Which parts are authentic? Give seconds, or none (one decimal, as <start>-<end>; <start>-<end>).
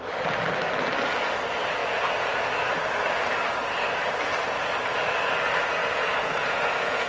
0.0-1.8; 2.4-5.8